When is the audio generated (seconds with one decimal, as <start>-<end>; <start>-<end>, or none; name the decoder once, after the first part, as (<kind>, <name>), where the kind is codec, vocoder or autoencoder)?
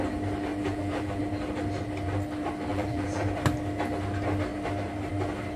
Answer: 0.5-1.2 (vocoder, BigVGAN v2); 2.7-3.2